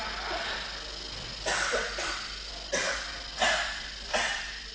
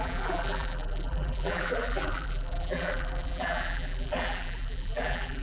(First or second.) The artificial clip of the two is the second